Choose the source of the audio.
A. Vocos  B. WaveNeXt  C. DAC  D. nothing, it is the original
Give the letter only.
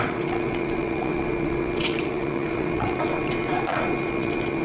B